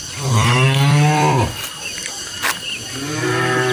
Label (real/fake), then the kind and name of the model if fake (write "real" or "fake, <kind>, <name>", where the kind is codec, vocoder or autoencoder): fake, vocoder, BigVGAN v2